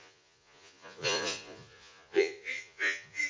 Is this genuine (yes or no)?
no